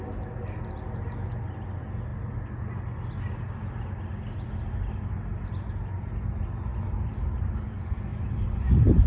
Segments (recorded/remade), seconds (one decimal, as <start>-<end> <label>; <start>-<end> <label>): 0.0-9.1 recorded